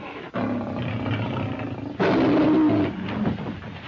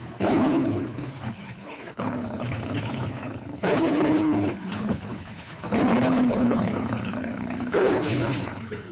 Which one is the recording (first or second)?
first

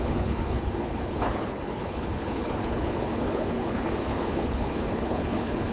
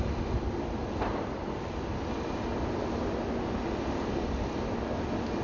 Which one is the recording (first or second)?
second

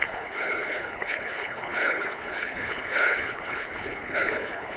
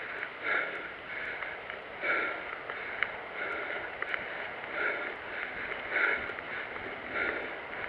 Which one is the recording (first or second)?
second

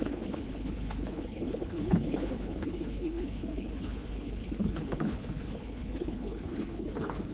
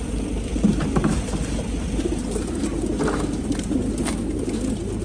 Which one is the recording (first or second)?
second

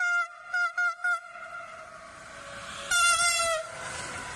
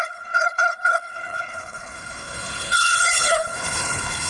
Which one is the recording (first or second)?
first